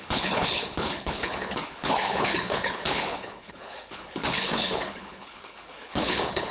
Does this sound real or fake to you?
fake